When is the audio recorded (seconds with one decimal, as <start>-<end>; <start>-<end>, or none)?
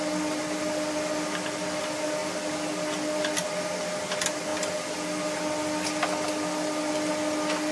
0.0-7.7